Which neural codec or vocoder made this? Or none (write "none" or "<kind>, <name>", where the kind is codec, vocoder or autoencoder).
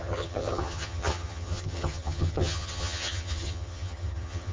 vocoder, HiFi-GAN